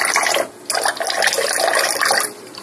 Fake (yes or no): no